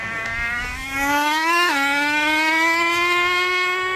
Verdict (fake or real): fake